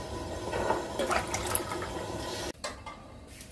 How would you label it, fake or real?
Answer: real